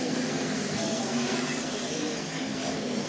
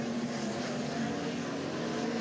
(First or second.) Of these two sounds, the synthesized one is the first